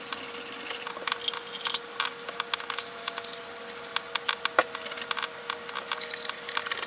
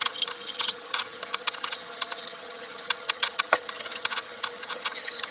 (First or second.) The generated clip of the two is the second